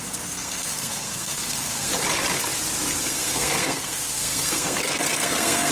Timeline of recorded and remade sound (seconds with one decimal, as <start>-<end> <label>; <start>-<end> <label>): 0.0-1.9 remade; 1.9-3.0 recorded; 3.0-5.7 remade